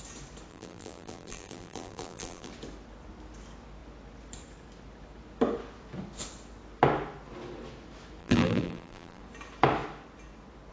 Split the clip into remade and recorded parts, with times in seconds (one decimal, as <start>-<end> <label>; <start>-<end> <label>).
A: 0.0-0.5 recorded; 0.5-2.5 remade; 2.5-8.2 recorded; 8.2-9.2 remade; 9.2-10.7 recorded